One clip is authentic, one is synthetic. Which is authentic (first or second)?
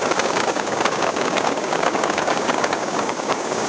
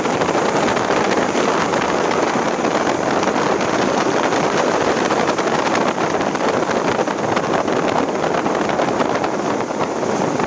second